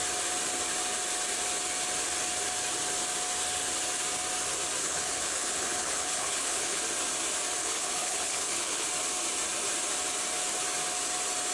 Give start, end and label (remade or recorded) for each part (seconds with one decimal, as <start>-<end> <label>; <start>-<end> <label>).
0.0-4.8 recorded; 4.8-6.8 remade; 6.8-7.6 recorded; 7.6-8.9 remade; 8.9-11.5 recorded